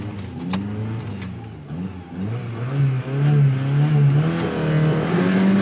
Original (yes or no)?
yes